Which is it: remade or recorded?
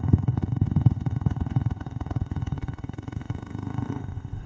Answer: remade